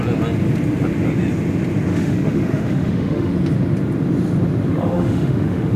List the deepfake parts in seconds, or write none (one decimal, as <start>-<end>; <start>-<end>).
1.9-3.3; 4.7-5.8